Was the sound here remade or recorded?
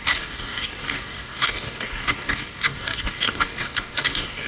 remade